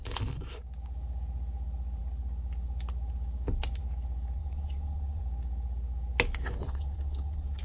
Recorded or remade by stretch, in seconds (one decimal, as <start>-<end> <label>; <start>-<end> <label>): 0.0-4.4 recorded; 4.4-5.2 remade; 5.2-6.6 recorded; 6.6-7.6 remade